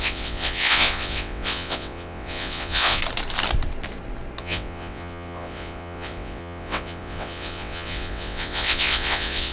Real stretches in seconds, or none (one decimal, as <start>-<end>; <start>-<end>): 3.0-4.4